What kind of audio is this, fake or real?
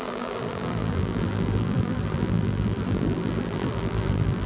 fake